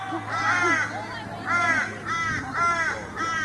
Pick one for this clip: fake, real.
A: real